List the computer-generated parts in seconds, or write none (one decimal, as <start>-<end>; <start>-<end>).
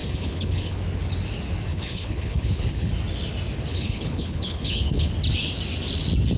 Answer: 0.0-0.8; 1.7-2.9; 3.7-5.1